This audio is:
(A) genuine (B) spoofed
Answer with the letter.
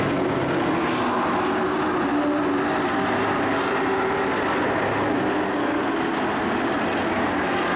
A